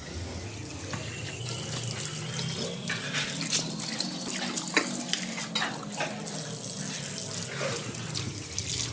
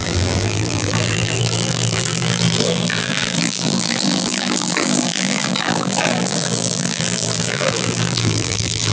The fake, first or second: second